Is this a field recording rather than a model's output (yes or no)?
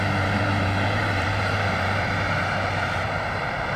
no